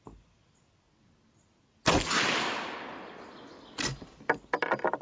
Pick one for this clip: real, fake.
real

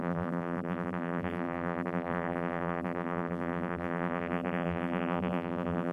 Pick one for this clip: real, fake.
fake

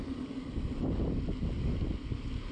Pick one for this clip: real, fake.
real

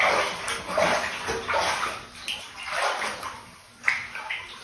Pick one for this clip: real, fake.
real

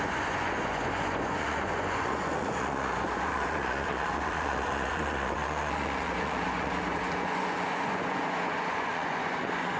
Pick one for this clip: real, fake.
fake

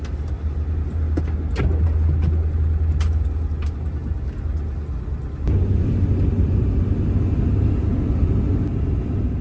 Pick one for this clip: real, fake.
real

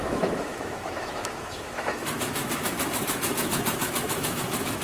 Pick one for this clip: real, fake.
fake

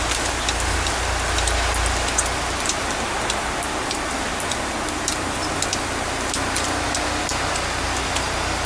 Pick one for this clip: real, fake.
real